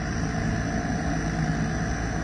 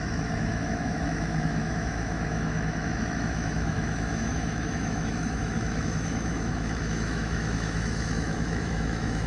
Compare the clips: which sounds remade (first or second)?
second